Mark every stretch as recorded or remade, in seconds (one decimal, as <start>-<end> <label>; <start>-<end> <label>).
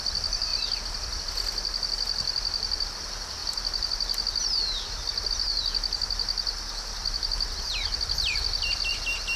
0.0-9.4 recorded